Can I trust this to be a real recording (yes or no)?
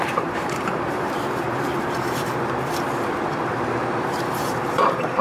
no